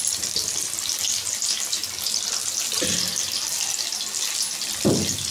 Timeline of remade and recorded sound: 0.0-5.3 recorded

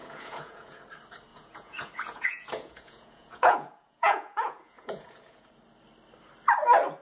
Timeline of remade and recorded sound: 0.0-0.8 remade; 0.8-1.3 recorded; 1.3-5.5 remade; 5.5-7.0 recorded

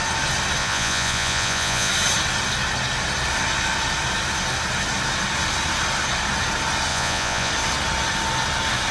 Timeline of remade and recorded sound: 0.0-0.6 recorded; 0.6-1.9 remade; 1.9-6.9 recorded; 6.9-7.5 remade; 7.5-8.9 recorded

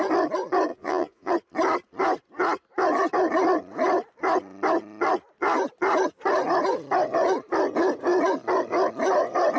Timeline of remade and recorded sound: 0.0-0.7 recorded; 0.7-1.3 remade; 1.3-9.6 recorded

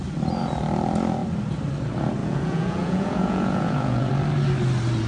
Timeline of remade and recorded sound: 0.0-2.2 recorded; 2.2-4.1 remade; 4.1-5.1 recorded

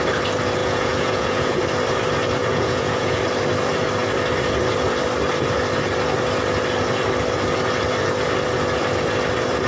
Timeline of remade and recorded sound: 0.0-0.6 recorded; 0.6-1.6 remade; 1.6-2.4 recorded; 2.4-3.2 remade; 3.2-9.7 recorded

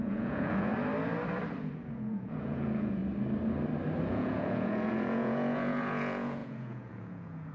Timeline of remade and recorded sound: 0.0-0.7 remade; 0.7-1.6 recorded; 1.6-3.0 remade; 3.0-4.1 recorded; 4.1-7.5 remade

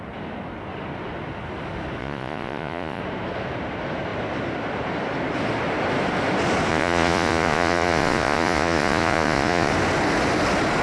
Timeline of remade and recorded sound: 0.0-2.0 recorded; 2.0-3.0 remade; 3.0-6.7 recorded; 6.7-9.7 remade; 9.7-10.8 recorded